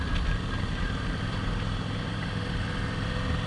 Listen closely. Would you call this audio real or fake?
real